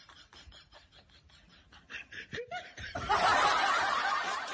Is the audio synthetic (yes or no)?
yes